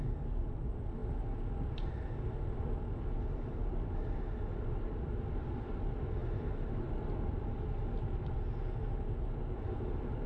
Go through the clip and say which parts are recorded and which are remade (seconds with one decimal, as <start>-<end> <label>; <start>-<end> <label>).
0.0-10.3 recorded